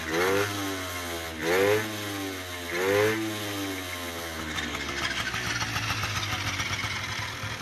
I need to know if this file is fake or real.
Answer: real